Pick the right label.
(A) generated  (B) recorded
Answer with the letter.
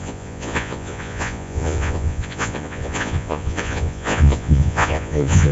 A